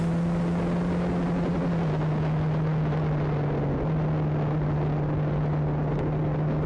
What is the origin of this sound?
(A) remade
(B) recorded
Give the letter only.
B